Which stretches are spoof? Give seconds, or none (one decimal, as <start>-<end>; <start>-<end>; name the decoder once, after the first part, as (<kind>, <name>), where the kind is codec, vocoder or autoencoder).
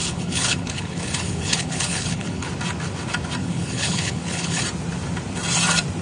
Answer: 0.0-2.5 (codec, HILCodec); 3.4-4.6